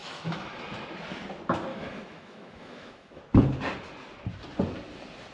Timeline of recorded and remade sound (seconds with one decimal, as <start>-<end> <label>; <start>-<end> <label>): 0.0-0.5 remade; 0.5-1.7 recorded; 1.7-3.2 remade; 3.2-5.3 recorded